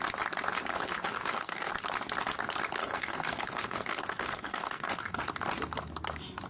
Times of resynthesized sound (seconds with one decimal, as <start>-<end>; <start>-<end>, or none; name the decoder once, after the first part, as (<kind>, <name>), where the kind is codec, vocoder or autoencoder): 0.7-1.7 (codec, SNAC); 2.8-5.2